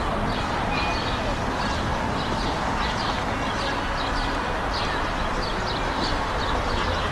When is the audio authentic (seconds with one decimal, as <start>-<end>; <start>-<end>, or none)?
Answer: 0.0-7.1